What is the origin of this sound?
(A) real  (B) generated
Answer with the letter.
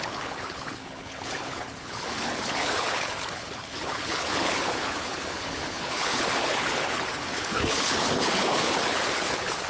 B